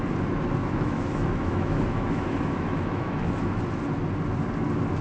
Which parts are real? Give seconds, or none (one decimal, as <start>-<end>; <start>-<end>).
0.0-0.6; 3.6-5.0